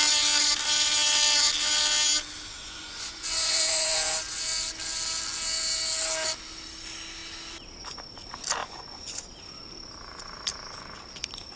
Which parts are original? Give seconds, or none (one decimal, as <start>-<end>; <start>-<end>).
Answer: 0.0-2.5; 4.4-8.6; 9.2-11.6